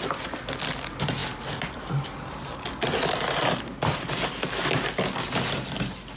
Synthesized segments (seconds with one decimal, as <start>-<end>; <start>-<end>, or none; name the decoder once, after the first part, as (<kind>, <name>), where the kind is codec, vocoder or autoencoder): none